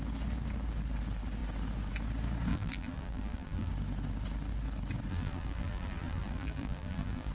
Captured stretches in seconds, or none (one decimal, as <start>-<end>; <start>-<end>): 0.0-2.5; 3.7-5.1